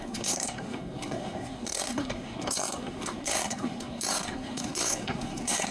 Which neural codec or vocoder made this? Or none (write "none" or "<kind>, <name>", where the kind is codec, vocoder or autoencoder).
codec, SNAC